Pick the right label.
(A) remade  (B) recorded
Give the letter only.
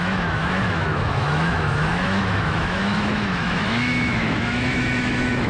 A